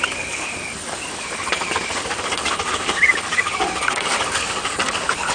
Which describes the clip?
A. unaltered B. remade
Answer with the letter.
B